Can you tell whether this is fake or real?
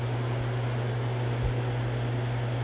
real